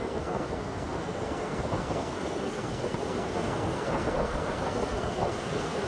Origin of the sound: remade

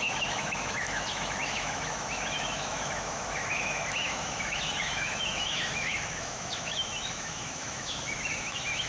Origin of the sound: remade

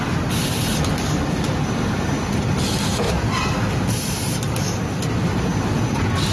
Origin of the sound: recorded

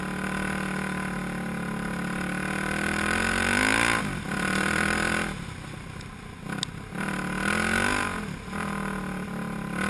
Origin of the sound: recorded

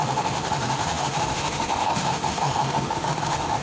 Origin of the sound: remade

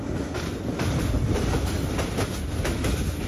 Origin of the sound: recorded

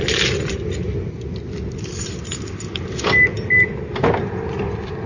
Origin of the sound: recorded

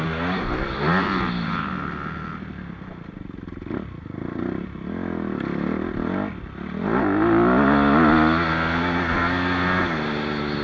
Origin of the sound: recorded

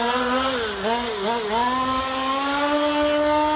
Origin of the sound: recorded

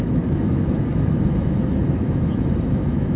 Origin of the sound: remade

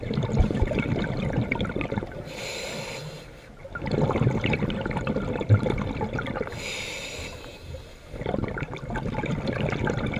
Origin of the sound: recorded